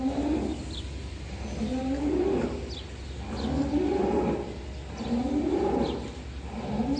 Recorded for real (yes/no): yes